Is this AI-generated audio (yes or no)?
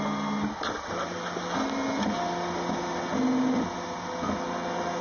no